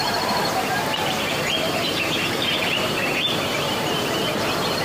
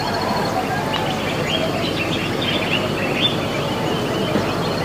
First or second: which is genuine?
second